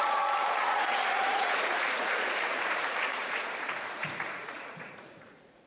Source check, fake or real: fake